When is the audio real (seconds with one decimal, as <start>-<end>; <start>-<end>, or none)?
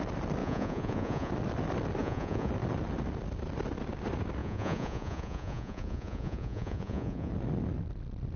0.0-0.4; 1.3-2.0; 2.5-4.4; 7.3-8.4